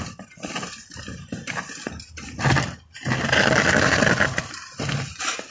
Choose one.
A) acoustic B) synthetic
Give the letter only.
A